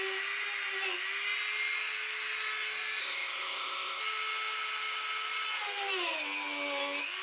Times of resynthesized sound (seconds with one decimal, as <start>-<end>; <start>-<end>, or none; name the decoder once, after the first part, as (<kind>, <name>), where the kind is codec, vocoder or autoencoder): 3.0-4.0 (codec, ZipCodec)